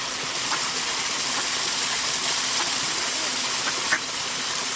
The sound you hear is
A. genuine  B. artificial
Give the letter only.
A